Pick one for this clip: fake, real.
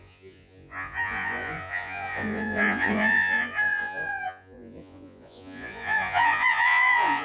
fake